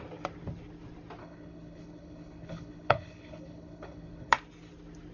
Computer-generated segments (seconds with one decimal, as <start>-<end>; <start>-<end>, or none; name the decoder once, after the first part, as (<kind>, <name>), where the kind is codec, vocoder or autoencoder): 1.2-4.3 (codec, HILCodec)

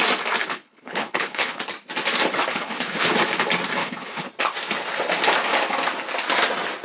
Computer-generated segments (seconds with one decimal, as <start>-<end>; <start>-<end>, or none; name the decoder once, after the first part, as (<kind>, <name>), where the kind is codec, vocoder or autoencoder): 0.4-1.6 (codec, HILCodec); 2.5-3.1; 3.8-4.3

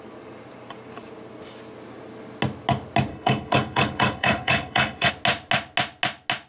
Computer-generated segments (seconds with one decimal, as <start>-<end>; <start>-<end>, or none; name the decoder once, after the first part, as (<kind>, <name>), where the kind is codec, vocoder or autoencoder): 3.1-5.1 (codec, HILCodec)

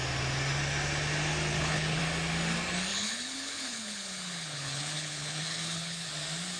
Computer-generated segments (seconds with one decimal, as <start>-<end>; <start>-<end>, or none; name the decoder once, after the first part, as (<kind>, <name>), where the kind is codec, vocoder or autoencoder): 1.5-2.0 (codec, HILCodec); 2.9-6.1

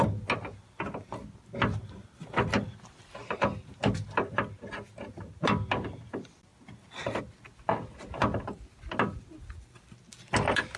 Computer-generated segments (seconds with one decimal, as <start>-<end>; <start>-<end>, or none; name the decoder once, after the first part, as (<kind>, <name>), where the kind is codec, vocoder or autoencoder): none

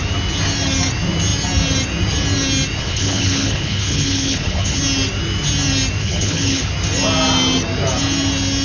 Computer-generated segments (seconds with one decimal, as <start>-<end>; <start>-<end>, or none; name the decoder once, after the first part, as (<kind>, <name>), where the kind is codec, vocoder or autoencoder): 2.8-4.8 (codec, HILCodec); 6.0-6.7

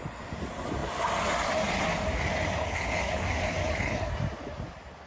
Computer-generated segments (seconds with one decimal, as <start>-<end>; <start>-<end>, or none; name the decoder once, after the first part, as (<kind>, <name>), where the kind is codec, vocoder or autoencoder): 2.6-3.2 (codec, HILCodec); 3.6-4.1